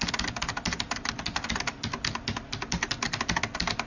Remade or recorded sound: recorded